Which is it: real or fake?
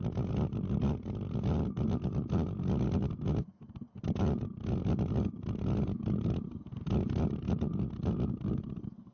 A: real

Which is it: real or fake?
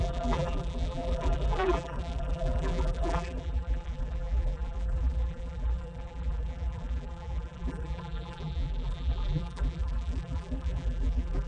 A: fake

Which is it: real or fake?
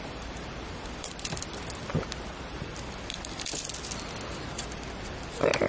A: fake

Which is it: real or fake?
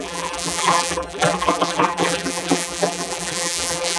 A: fake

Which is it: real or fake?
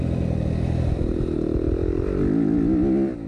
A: real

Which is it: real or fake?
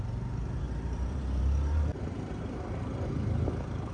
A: fake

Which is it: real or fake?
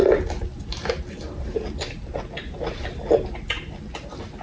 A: real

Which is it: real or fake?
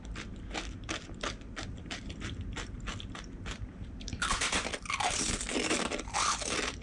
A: fake